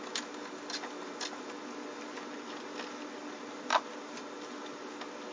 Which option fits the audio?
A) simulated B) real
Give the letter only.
B